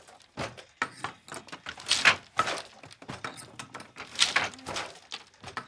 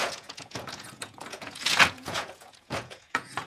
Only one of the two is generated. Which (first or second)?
second